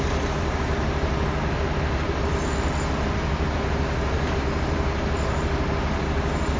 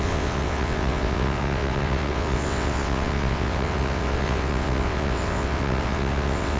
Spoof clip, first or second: second